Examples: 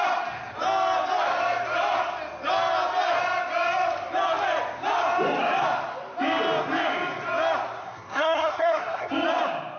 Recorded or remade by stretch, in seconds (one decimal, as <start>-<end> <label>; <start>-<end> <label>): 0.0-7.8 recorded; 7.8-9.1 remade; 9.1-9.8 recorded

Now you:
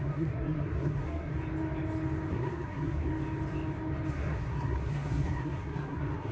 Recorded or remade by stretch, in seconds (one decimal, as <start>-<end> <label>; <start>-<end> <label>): 0.0-1.3 remade; 1.3-2.3 recorded; 2.3-3.1 remade; 3.1-4.1 recorded; 4.1-6.3 remade

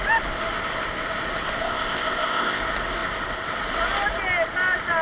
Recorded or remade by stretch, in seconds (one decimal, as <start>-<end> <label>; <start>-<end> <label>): 0.0-1.6 recorded; 1.6-2.6 remade; 2.6-5.0 recorded

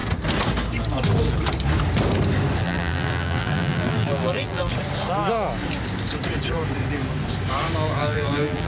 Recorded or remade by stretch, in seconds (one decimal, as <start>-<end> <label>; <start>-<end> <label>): 0.0-2.6 recorded; 2.6-4.7 remade; 4.7-8.0 recorded; 8.0-8.7 remade